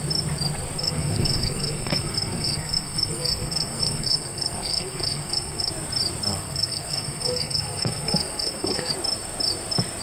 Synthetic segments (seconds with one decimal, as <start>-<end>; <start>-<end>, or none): 0.8-5.7; 6.3-8.9